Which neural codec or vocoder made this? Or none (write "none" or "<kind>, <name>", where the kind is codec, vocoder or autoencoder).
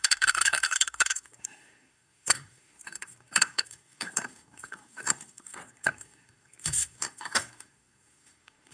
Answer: codec, SNAC